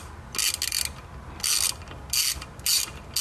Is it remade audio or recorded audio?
recorded